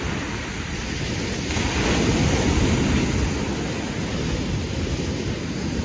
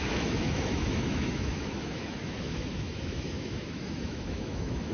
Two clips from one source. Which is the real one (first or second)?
first